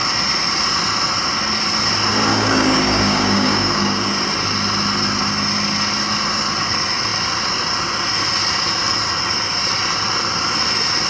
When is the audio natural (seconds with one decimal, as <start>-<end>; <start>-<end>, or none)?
0.0-2.3; 4.1-11.1

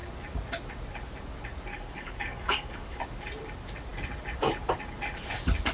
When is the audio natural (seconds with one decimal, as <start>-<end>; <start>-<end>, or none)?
0.0-1.7; 3.0-5.7

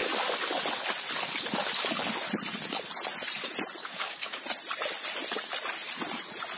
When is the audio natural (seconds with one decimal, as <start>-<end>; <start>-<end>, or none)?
0.0-3.8; 4.4-6.6